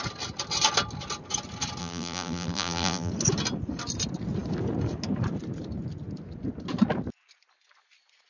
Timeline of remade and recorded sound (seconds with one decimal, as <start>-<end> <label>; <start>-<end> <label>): 0.0-1.8 recorded; 1.8-3.1 remade; 3.1-8.3 recorded